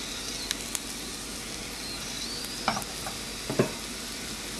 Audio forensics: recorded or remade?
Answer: recorded